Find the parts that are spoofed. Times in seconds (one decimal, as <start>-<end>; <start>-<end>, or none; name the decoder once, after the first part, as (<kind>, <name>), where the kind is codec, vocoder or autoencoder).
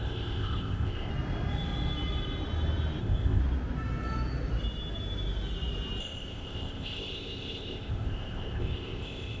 0.0-1.1 (codec, ZipCodec); 3.0-3.4; 6.0-9.4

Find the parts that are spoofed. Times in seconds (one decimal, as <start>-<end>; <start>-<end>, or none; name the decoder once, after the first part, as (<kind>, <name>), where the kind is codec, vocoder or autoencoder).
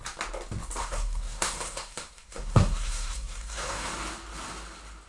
0.8-3.9 (codec, SNAC)